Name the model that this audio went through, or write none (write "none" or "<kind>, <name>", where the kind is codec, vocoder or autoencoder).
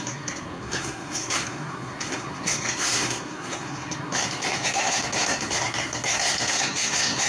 codec, SNAC